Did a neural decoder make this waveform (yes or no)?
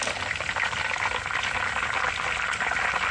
no